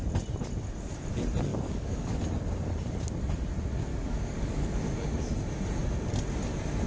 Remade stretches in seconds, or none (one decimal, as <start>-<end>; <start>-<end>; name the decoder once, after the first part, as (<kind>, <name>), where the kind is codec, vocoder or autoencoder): 1.5-2.2 (codec, DAC); 3.9-4.8